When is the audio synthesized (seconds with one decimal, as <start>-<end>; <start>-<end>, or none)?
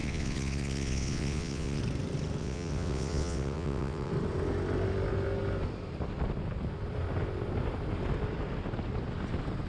0.0-1.8; 2.4-4.1